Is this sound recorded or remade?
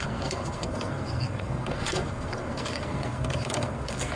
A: remade